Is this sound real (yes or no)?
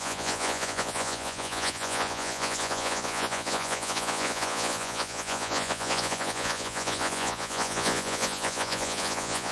no